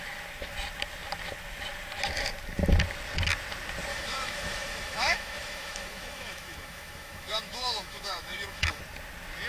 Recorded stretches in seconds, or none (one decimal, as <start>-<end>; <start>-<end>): 0.0-3.9; 8.8-9.5